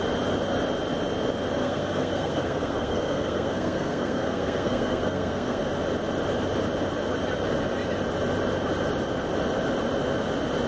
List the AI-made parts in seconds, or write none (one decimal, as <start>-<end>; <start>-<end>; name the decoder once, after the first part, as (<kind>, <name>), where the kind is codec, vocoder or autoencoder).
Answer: 1.6-5.6 (codec, SNAC)